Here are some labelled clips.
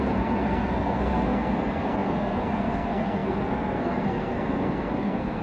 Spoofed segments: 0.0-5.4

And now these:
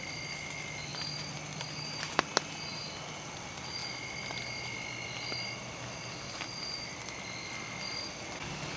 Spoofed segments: none